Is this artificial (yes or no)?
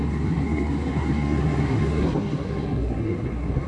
yes